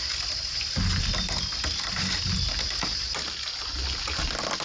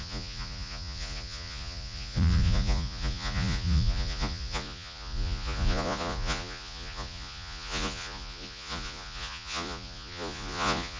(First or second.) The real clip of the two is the first